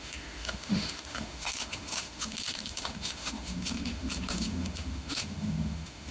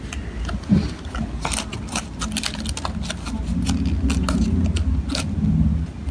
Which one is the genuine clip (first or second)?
second